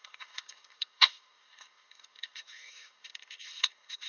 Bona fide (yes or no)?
no